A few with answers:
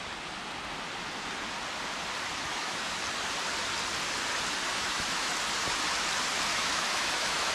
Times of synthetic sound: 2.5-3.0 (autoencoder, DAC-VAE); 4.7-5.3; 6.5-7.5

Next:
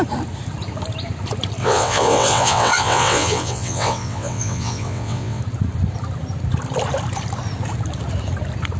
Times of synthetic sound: 1.6-5.4 (vocoder, WaveNeXt)

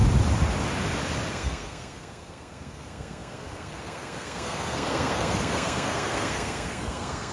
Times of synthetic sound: 1.3-7.3 (codec, SNAC)

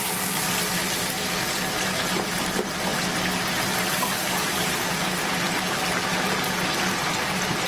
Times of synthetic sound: none

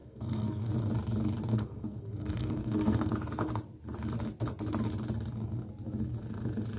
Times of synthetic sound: 0.0-0.7 (codec, SNAC); 1.5-3.1

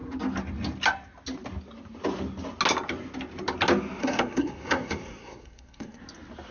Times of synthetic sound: 4.0-6.0 (codec, SNAC)